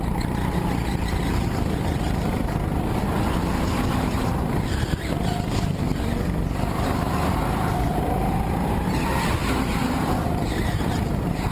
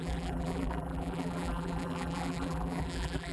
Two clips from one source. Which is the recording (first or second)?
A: first